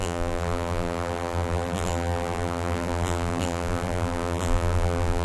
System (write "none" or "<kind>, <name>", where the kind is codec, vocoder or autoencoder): vocoder, BigVGAN v2